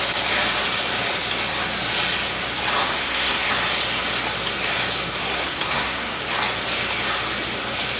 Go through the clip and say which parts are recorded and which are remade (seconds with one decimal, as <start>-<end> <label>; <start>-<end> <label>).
0.0-2.8 recorded; 2.8-3.5 remade; 3.5-5.2 recorded; 5.2-6.2 remade; 6.2-8.0 recorded